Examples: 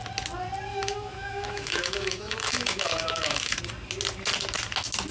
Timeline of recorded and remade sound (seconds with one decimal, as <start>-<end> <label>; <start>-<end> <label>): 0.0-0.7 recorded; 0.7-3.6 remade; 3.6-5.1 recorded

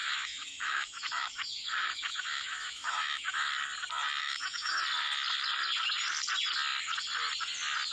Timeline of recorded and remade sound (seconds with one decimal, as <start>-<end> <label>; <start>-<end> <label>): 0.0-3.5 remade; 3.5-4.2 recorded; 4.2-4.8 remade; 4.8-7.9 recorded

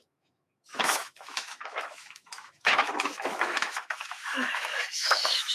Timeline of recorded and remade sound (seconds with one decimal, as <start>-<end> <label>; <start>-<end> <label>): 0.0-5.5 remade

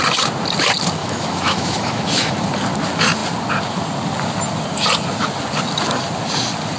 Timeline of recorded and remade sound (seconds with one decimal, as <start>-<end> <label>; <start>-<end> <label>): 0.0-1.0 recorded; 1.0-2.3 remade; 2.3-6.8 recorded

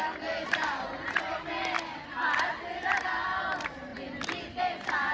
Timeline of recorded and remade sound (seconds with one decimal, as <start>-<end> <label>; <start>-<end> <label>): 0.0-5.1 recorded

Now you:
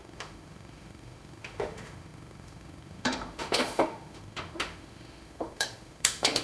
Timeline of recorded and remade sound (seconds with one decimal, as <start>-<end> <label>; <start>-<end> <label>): 0.0-6.4 remade

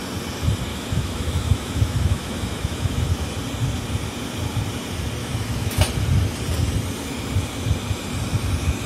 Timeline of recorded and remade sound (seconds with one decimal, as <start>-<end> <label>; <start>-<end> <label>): 0.0-0.7 recorded; 0.7-3.3 remade; 3.3-5.2 recorded; 5.2-5.9 remade; 5.9-8.9 recorded

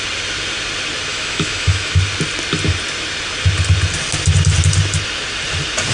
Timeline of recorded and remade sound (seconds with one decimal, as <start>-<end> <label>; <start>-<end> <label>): 0.0-1.1 recorded; 1.1-2.0 remade; 2.0-5.9 recorded